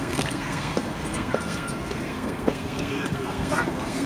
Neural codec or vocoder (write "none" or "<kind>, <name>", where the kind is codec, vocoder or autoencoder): codec, SNAC